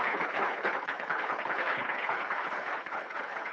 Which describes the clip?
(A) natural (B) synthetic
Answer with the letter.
B